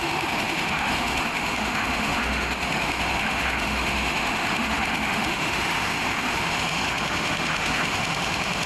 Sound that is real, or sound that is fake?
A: fake